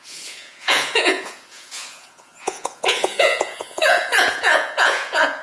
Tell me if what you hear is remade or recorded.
remade